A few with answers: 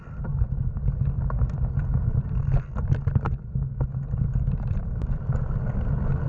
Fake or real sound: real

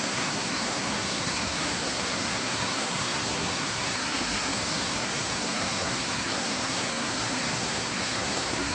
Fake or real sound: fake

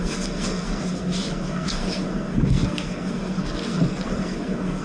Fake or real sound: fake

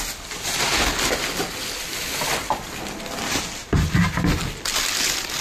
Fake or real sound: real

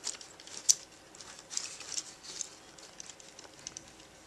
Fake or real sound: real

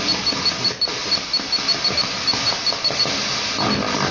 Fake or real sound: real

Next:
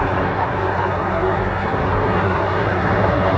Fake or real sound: fake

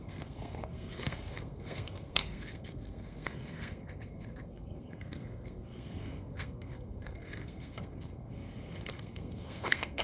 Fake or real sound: fake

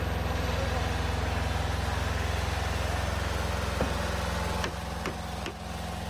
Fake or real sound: real